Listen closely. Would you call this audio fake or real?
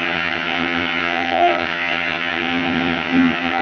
fake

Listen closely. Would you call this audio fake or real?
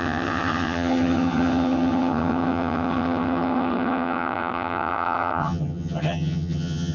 fake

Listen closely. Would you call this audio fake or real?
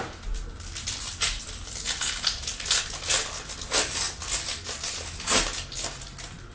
real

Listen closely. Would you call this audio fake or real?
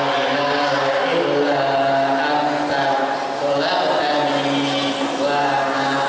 real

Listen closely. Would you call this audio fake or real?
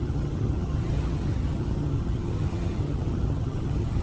fake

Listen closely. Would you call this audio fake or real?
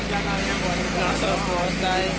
real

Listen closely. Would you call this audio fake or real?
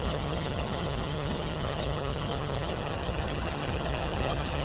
fake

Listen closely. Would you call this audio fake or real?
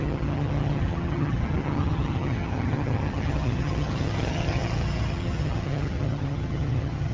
fake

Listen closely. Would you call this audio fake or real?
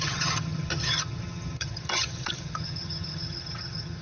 fake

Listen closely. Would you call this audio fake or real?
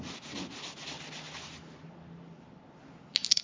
real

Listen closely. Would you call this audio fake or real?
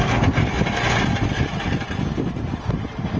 real